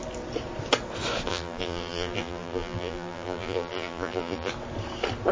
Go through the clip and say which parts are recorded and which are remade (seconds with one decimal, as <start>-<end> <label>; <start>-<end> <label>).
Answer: 0.0-1.3 recorded; 1.3-4.5 remade; 4.5-5.3 recorded